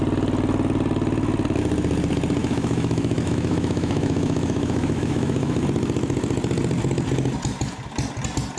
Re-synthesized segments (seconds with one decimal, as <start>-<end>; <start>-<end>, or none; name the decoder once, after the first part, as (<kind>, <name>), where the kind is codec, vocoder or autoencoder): 2.4-5.6 (autoencoder, DAC-VAE)